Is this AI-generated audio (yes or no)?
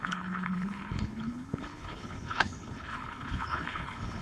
yes